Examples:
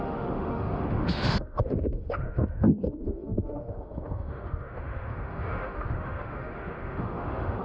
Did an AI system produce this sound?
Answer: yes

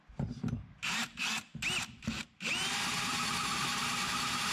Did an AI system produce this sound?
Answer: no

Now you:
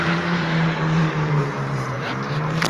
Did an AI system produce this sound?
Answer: yes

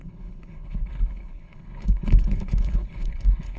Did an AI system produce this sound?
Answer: yes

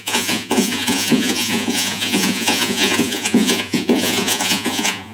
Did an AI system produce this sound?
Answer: yes